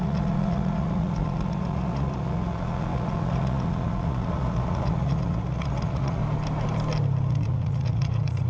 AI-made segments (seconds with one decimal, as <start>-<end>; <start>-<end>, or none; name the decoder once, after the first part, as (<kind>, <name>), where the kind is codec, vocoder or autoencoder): 0.0-6.2 (vocoder, Vocos); 7.3-8.5